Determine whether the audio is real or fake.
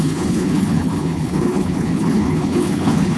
fake